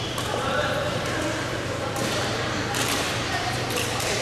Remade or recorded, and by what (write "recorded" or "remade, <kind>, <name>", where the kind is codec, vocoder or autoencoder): remade, vocoder, BigVGAN v2